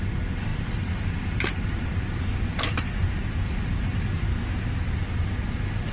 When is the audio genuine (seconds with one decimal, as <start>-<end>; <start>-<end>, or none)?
0.0-4.3; 4.8-5.9